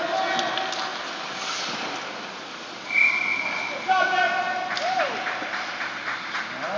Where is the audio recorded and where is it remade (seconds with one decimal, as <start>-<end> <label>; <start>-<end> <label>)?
0.0-6.8 recorded